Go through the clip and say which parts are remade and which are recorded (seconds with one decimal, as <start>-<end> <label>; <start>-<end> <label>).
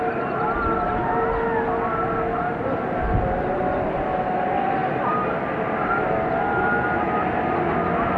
0.0-8.2 recorded